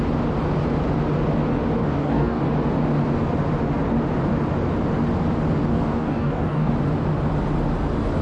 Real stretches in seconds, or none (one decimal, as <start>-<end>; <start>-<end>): 0.0-1.8; 2.4-5.7; 6.7-8.2